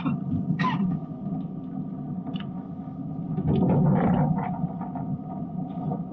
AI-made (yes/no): no